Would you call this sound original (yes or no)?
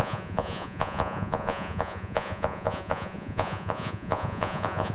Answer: no